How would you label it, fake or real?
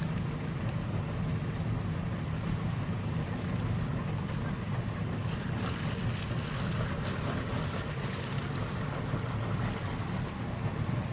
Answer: real